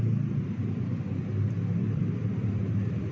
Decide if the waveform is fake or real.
fake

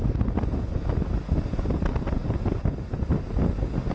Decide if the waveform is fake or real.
real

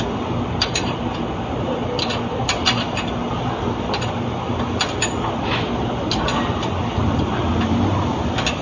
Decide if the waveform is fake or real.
real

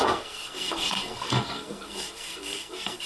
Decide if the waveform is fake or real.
fake